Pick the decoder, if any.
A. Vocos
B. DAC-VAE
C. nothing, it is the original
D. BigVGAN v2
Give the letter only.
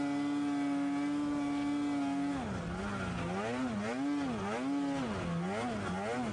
C